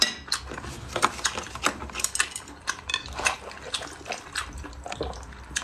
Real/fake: real